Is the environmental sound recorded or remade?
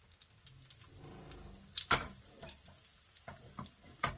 recorded